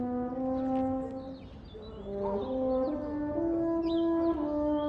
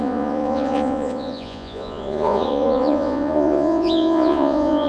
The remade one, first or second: second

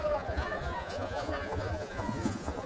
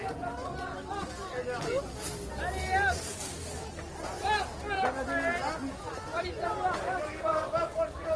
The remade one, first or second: first